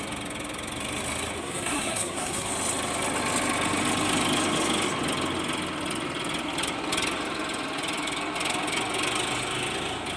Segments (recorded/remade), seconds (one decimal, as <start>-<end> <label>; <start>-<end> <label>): 0.0-1.4 recorded; 1.4-2.5 remade; 2.5-10.2 recorded